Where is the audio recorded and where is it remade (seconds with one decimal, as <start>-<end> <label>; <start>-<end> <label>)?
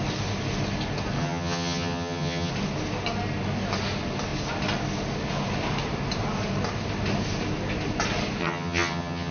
0.0-1.2 recorded; 1.2-2.5 remade; 2.5-8.4 recorded; 8.4-9.3 remade